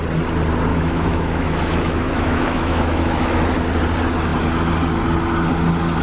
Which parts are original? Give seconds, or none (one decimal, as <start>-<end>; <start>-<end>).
0.0-0.7; 3.4-6.0